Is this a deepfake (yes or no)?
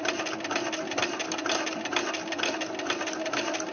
no